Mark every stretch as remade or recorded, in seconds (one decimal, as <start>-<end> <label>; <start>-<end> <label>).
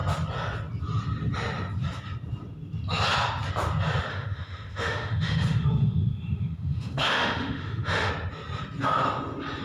0.0-4.1 recorded; 4.1-8.1 remade; 8.1-9.6 recorded